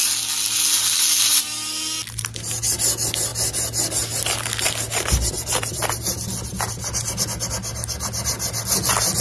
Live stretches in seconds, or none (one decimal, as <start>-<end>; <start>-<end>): 0.0-9.2